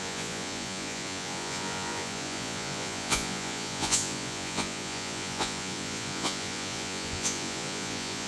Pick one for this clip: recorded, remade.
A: remade